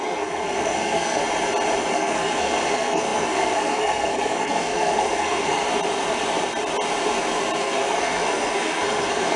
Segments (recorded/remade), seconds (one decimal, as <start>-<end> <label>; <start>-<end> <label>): 0.0-1.2 remade; 1.2-1.9 recorded; 1.9-5.6 remade; 5.6-7.6 recorded; 7.6-9.4 remade